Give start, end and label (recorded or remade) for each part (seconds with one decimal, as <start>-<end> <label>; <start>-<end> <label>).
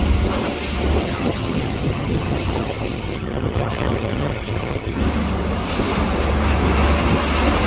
0.0-1.0 recorded; 1.0-5.0 remade; 5.0-7.7 recorded